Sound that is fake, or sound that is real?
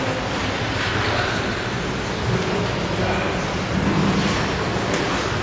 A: real